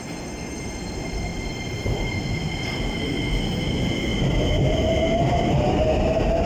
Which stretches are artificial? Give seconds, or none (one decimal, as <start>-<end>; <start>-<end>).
none